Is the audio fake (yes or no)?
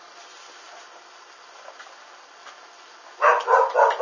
no